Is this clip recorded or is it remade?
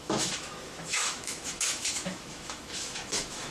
remade